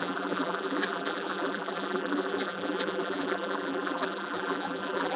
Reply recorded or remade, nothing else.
remade